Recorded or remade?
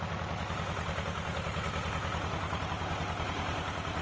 recorded